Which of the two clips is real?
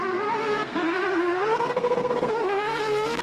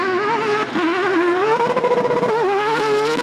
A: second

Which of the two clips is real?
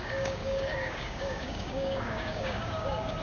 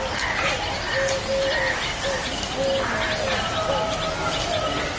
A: second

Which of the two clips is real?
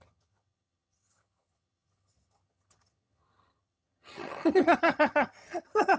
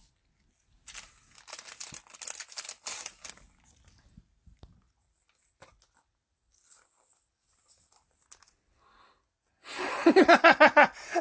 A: second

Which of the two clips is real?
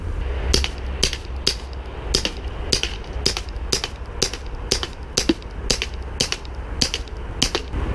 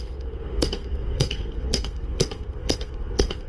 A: first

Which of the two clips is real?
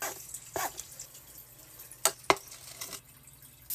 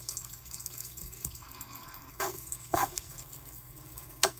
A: first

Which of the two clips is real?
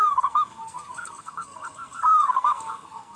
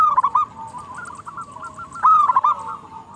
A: second